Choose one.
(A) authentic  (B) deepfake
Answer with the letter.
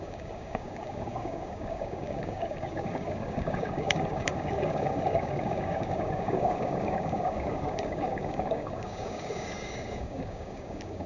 B